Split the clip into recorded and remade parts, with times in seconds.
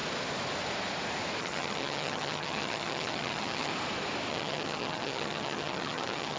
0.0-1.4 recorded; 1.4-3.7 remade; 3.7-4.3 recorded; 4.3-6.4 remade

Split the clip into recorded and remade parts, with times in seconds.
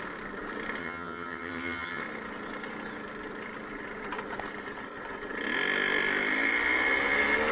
0.0-0.8 recorded; 0.8-2.0 remade; 2.0-7.5 recorded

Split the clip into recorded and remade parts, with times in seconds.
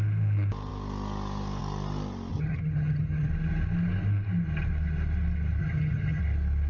0.0-2.3 recorded; 2.3-3.3 remade; 3.3-5.6 recorded; 5.6-6.2 remade; 6.2-6.7 recorded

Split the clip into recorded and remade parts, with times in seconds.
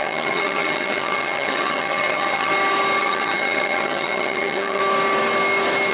0.0-2.5 remade; 2.5-3.0 recorded; 3.0-4.8 remade; 4.8-5.9 recorded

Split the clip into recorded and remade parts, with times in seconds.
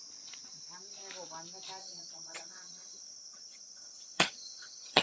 0.0-1.8 recorded; 1.8-5.0 remade